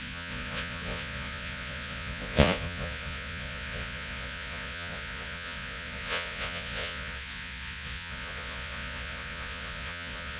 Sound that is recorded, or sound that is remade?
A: remade